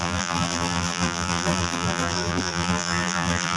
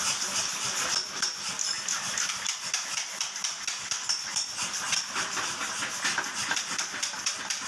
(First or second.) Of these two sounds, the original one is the second